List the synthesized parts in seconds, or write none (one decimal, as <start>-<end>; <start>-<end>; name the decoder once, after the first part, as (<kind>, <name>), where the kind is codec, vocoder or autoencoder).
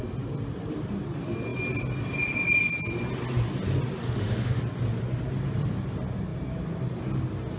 4.0-4.6 (autoencoder, DAC-VAE)